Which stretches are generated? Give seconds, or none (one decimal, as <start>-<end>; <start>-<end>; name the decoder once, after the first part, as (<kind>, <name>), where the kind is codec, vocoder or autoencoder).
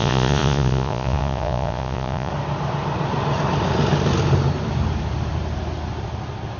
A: 0.0-2.3 (vocoder, Vocos)